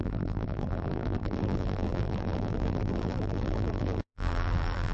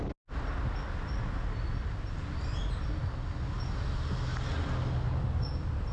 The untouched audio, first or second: second